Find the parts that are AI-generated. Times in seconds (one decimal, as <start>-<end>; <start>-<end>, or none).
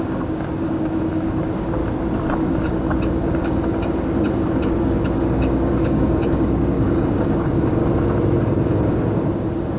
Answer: 0.0-1.8; 2.4-7.8; 8.4-9.8